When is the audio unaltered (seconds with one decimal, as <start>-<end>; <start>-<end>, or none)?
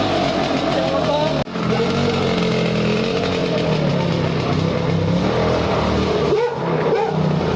0.0-7.6